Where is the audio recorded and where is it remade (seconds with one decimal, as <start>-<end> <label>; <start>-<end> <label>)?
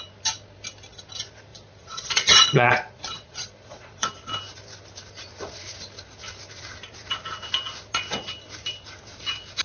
0.0-1.5 recorded; 1.5-4.1 remade; 4.1-9.6 recorded